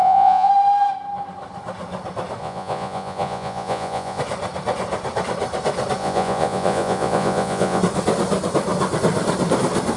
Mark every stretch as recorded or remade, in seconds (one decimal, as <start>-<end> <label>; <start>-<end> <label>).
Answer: 0.0-0.5 remade; 0.5-2.4 recorded; 2.4-4.2 remade; 4.2-6.0 recorded; 6.0-7.8 remade; 7.8-10.0 recorded